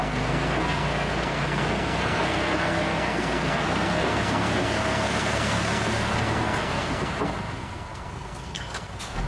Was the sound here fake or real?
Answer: fake